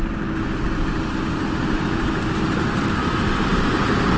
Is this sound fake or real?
real